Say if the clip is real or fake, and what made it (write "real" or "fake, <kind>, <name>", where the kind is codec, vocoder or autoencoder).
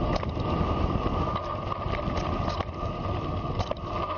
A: real